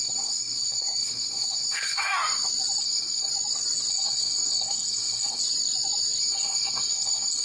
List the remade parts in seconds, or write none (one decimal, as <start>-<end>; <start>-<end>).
0.0-2.1; 2.8-3.3; 3.9-5.4; 6.2-7.4